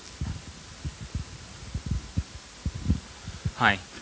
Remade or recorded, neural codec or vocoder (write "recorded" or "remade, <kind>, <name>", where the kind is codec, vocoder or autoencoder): recorded